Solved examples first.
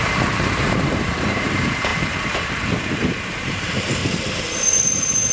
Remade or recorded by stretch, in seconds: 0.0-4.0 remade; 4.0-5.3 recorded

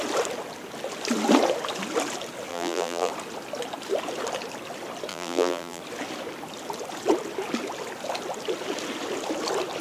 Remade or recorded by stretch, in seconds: 0.0-2.5 recorded; 2.5-3.1 remade; 3.1-5.1 recorded; 5.1-5.8 remade; 5.8-9.8 recorded

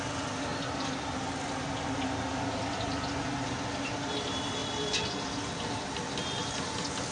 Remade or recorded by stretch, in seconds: 0.0-0.5 recorded; 0.5-1.2 remade; 1.2-4.6 recorded; 4.6-5.1 remade; 5.1-7.1 recorded

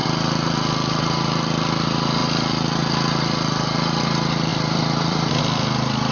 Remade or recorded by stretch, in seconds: 0.0-4.5 recorded; 4.5-5.4 remade; 5.4-6.1 recorded